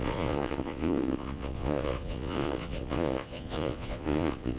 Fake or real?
fake